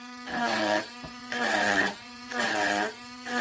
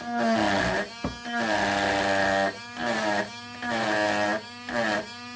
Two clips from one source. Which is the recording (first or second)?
second